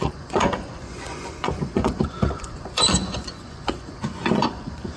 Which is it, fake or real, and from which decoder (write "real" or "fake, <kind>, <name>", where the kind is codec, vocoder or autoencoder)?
fake, vocoder, Vocos